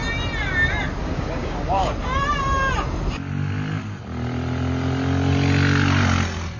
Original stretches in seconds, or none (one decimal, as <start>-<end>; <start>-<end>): 0.0-1.0; 1.9-6.6